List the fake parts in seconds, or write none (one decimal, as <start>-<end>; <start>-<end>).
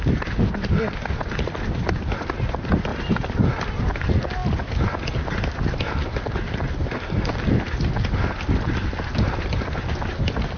2.9-3.8